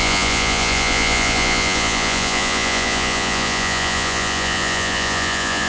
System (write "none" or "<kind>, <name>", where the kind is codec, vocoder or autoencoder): vocoder, Vocos